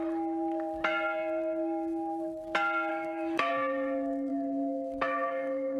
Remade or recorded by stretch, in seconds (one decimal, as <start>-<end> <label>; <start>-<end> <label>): 0.0-2.9 recorded; 2.9-3.5 remade; 3.5-4.3 recorded; 4.3-5.8 remade